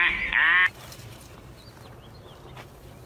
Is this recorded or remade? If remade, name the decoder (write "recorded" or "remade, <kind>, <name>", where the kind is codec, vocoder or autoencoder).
recorded